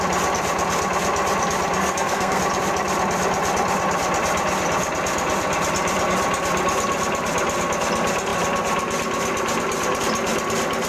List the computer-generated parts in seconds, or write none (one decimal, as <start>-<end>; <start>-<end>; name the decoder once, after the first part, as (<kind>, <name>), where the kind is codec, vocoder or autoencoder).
1.8-2.4 (codec, SNAC)